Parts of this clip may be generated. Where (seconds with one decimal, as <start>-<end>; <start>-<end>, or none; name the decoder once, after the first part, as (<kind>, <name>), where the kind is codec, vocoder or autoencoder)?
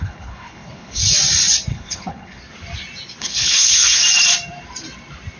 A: 0.0-1.0 (codec, HILCodec); 1.7-2.4; 3.2-4.0